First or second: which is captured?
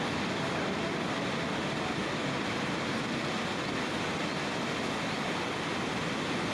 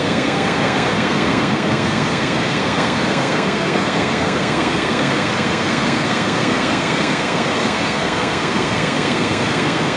first